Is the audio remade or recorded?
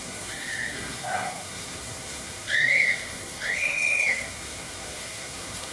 remade